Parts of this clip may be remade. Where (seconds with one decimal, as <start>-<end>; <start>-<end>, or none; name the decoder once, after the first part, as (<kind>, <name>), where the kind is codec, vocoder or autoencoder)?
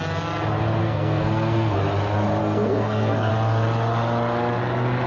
0.8-1.8 (codec, SNAC); 2.4-3.3